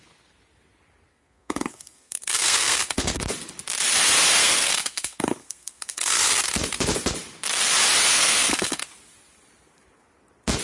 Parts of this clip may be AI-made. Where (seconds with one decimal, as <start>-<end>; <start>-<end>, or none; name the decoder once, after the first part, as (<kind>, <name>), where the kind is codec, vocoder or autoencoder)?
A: 1.1-3.2 (codec, SNAC); 4.4-6.2; 8.1-8.8